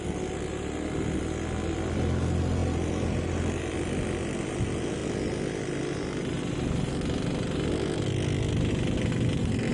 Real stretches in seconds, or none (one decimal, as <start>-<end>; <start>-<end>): 0.0-9.7

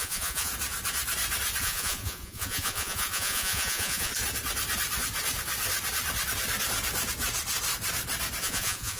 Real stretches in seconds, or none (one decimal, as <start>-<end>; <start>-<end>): 0.5-1.6; 4.1-8.4